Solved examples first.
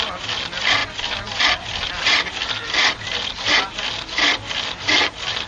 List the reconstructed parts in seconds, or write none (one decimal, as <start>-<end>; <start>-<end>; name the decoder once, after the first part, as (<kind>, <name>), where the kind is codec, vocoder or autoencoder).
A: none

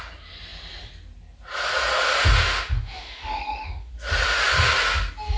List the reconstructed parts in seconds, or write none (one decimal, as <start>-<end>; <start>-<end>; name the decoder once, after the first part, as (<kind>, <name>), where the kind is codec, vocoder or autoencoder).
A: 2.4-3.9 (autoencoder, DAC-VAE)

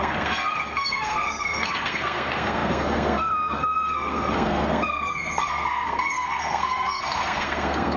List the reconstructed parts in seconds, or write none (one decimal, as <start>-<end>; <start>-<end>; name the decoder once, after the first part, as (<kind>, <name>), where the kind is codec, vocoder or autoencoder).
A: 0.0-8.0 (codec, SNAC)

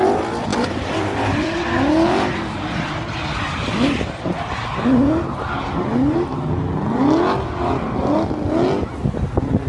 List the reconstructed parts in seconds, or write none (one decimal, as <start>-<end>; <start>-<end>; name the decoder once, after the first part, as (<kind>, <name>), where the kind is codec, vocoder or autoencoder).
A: none

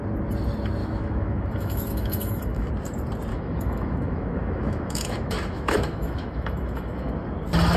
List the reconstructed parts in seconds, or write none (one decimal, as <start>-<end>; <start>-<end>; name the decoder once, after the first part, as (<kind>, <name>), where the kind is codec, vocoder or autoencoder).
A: 0.8-2.7 (autoencoder, DAC-VAE); 3.3-7.1